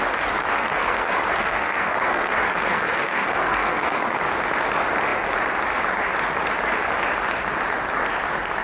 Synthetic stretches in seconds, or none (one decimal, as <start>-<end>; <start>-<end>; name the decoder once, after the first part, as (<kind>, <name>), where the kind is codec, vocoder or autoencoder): 0.4-4.2 (codec, SNAC)